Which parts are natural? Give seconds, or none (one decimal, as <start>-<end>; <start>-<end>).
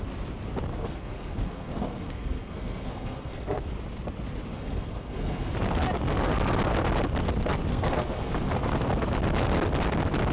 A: 0.0-0.7; 3.7-4.5; 5.5-7.7; 8.5-10.3